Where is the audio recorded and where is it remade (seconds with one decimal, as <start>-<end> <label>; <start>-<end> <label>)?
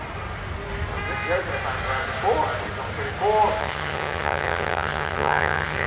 0.0-3.6 recorded; 3.6-5.9 remade